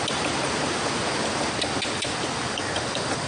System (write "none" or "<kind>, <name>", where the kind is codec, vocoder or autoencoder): none